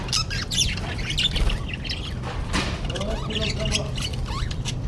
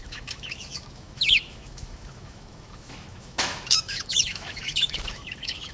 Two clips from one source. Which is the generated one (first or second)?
second